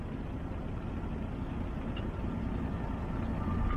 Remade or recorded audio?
recorded